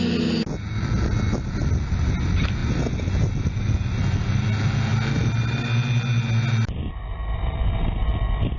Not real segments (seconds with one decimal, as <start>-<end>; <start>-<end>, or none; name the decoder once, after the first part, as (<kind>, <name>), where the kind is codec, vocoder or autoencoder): none